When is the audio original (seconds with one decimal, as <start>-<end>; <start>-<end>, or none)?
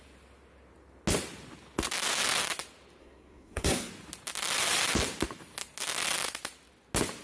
0.0-3.0; 3.9-7.2